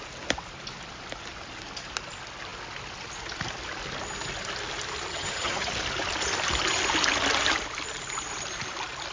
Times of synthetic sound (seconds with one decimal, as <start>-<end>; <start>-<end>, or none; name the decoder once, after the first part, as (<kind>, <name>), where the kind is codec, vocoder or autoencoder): 5.1-5.7 (vocoder, HiFi-GAN)